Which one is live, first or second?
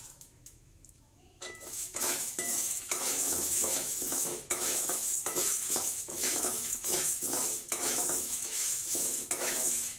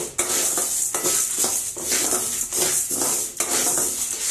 second